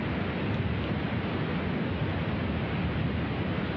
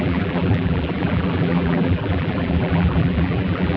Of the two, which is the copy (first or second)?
second